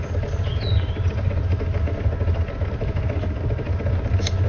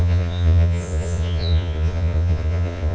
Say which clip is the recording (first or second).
first